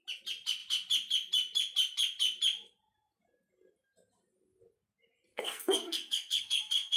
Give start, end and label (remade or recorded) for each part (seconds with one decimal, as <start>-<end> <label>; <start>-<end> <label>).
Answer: 0.0-5.3 recorded; 5.3-7.0 remade